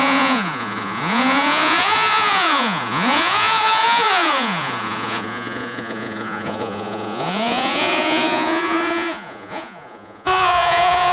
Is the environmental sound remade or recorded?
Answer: remade